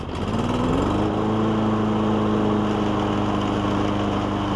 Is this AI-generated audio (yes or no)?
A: no